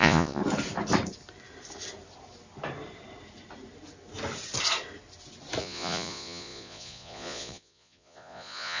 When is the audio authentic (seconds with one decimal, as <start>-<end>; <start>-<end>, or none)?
0.4-5.6